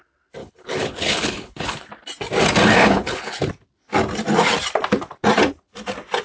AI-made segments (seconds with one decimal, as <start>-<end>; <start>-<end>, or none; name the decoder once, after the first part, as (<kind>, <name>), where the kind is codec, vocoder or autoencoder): 0.4-1.9 (codec, HILCodec); 2.8-3.4